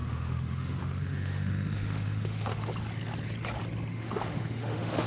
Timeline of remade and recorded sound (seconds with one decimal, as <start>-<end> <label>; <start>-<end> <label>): 0.0-2.7 remade; 2.7-3.9 recorded; 3.9-5.1 remade